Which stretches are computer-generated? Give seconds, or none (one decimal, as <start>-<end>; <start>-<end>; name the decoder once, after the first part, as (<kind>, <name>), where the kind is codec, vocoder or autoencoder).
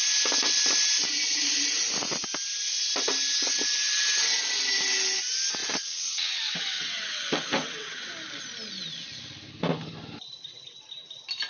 5.6-8.1 (vocoder, WaveNeXt)